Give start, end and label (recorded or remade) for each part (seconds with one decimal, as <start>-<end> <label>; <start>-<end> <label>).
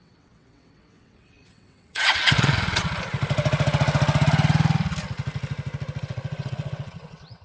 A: 0.0-2.9 remade; 2.9-6.0 recorded; 6.0-7.4 remade